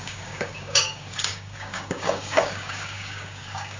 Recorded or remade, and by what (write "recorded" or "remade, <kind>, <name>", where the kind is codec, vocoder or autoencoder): remade, codec, DAC